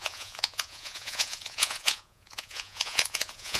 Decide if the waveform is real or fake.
fake